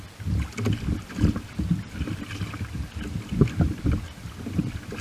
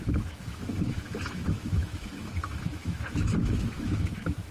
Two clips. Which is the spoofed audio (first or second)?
second